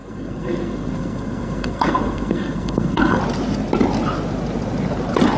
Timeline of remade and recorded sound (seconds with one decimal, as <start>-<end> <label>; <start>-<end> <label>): 0.0-3.2 remade; 3.2-5.4 recorded